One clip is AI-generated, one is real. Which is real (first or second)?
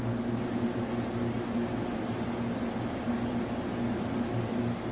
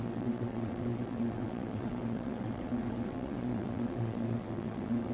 first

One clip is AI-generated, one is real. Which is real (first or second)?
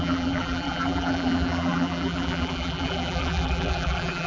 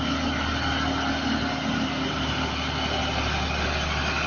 second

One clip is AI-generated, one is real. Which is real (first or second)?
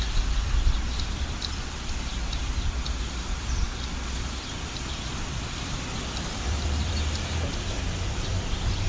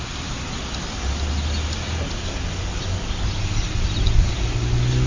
second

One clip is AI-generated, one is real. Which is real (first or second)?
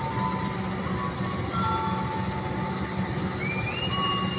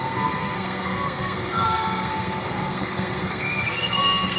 first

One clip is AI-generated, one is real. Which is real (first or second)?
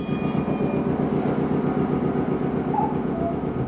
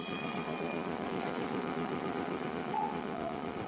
first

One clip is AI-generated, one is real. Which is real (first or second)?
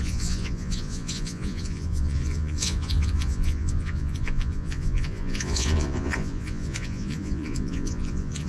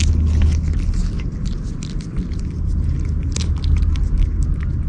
second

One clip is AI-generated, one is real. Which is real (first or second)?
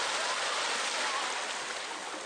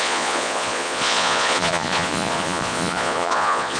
first